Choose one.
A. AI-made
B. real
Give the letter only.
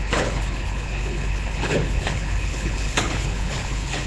A